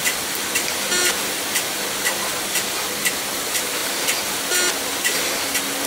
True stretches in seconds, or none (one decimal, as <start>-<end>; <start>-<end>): 0.0-5.9